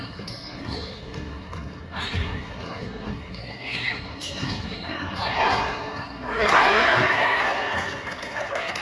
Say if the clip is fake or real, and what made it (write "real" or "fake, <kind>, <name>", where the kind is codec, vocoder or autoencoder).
fake, codec, SNAC